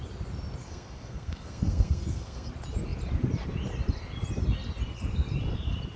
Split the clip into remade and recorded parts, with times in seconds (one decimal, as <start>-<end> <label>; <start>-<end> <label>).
0.0-0.6 recorded; 0.6-2.5 remade; 2.5-6.0 recorded